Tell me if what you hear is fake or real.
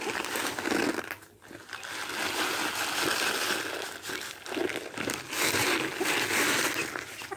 real